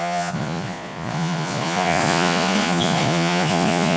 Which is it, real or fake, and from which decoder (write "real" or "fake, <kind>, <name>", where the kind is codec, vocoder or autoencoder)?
fake, vocoder, Vocos